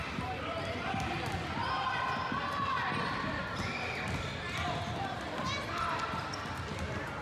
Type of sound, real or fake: real